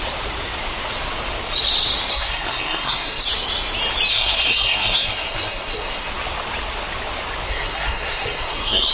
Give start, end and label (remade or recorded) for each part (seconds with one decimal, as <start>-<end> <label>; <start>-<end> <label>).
0.0-2.1 recorded; 2.1-3.2 remade; 3.2-4.1 recorded; 4.1-6.1 remade; 6.1-7.5 recorded; 7.5-8.9 remade